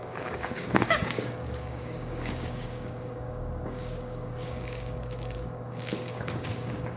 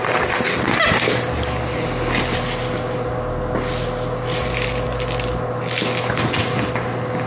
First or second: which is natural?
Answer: second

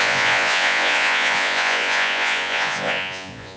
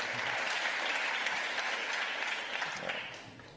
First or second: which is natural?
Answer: second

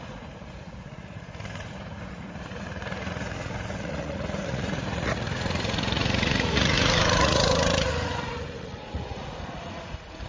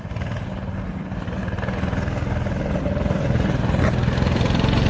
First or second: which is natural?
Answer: second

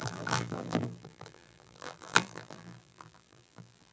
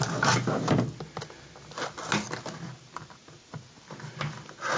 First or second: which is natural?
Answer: second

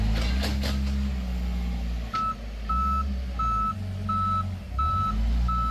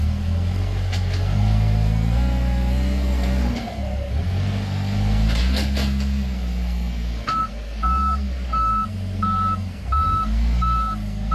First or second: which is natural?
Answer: first